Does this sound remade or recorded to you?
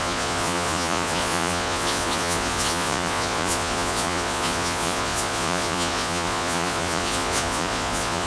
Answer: remade